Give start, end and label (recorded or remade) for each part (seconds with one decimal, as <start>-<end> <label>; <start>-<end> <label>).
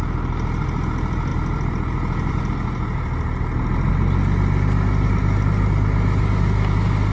0.0-7.1 recorded